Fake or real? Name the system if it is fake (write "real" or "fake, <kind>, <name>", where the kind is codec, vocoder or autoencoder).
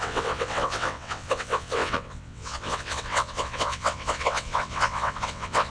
fake, vocoder, WaveNeXt